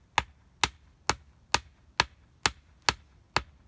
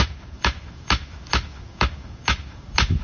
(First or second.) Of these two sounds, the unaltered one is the first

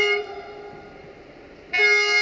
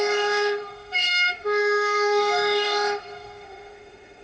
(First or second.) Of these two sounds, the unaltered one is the first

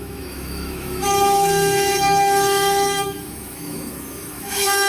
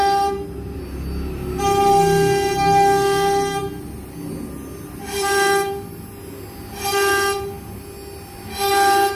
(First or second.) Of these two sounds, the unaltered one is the second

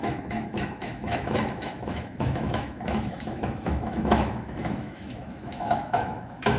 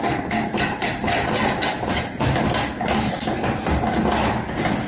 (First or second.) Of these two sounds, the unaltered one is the second